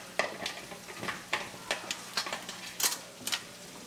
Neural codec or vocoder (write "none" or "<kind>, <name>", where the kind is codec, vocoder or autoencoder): none